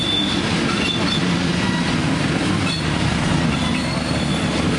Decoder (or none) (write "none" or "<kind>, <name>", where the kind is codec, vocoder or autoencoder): none